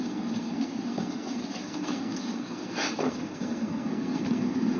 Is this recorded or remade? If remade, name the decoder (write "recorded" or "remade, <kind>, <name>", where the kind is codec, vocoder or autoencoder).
remade, codec, SNAC